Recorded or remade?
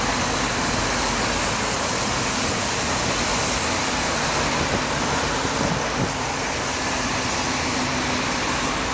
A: recorded